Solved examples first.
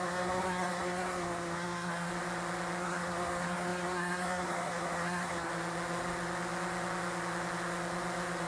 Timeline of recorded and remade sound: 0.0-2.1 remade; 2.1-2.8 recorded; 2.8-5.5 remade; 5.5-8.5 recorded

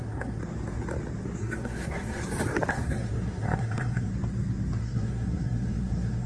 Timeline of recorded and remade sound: 0.0-0.4 remade; 0.4-1.4 recorded; 1.4-2.2 remade; 2.2-2.7 recorded; 2.7-4.1 remade; 4.1-4.8 recorded; 4.8-6.3 remade

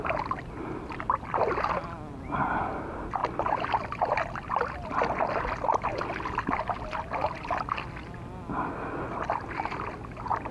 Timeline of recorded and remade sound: 0.0-10.5 recorded